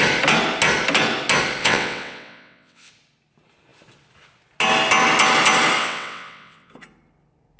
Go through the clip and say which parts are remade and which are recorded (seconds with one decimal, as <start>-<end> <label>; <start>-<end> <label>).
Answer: 0.0-1.6 recorded; 1.6-2.9 remade; 2.9-5.8 recorded; 5.8-6.7 remade; 6.7-7.6 recorded